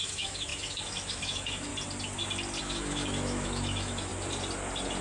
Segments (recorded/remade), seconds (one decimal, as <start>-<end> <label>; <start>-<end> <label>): 0.0-1.7 remade; 1.7-2.6 recorded; 2.6-4.1 remade; 4.1-5.0 recorded

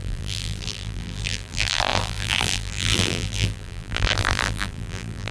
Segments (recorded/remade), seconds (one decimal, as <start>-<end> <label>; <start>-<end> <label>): 0.0-5.3 remade